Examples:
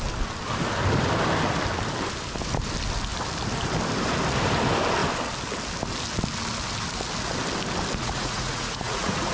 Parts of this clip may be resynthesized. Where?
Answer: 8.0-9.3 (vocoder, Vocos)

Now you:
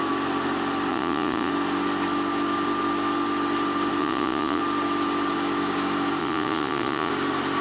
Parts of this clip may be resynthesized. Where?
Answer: 0.9-1.5 (vocoder, Vocos); 4.0-4.6; 6.2-7.1

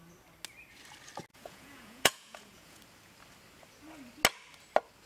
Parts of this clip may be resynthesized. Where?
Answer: 1.3-2.8 (vocoder, Vocos)

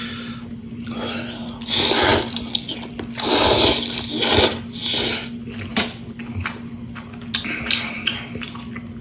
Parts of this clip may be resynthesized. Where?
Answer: none

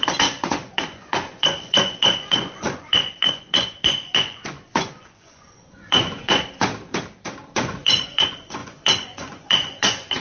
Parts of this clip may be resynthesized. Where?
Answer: 0.0-6.7 (vocoder, Vocos); 7.5-10.2